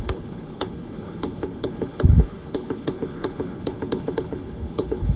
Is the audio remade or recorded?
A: remade